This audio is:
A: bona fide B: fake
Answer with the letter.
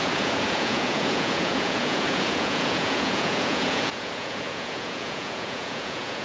B